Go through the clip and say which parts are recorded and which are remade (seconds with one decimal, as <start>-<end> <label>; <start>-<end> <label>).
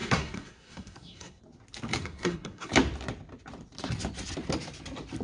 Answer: 0.0-1.4 remade; 1.4-2.0 recorded; 2.0-2.7 remade; 2.7-5.2 recorded